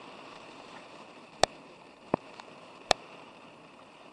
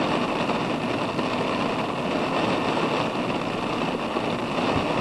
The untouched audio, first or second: second